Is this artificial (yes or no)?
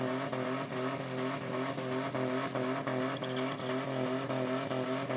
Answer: no